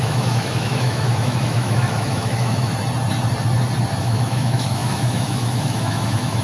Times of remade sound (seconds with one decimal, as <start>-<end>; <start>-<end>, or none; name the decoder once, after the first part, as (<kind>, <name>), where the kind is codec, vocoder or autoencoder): 0.0-2.7 (autoencoder, DAC-VAE); 4.0-6.4